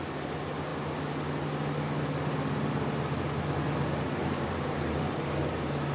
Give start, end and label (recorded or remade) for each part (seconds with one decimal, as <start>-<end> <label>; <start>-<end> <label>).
0.0-4.2 recorded; 4.2-5.1 remade; 5.1-5.9 recorded